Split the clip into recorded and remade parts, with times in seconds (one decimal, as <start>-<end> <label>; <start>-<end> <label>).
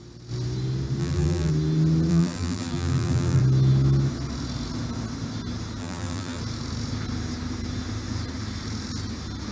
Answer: 0.0-1.0 recorded; 1.0-1.5 remade; 1.5-2.1 recorded; 2.1-3.4 remade; 3.4-5.8 recorded; 5.8-6.4 remade; 6.4-9.5 recorded